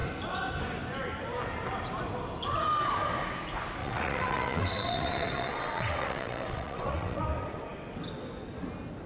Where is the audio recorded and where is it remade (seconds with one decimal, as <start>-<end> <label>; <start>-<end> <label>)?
0.0-3.8 recorded; 3.8-7.2 remade; 7.2-9.1 recorded